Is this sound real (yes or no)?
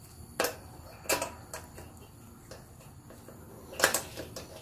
yes